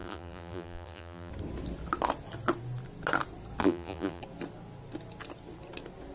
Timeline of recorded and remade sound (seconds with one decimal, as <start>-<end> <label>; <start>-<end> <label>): 0.0-1.3 remade; 1.3-3.6 recorded; 3.6-4.2 remade; 4.2-6.1 recorded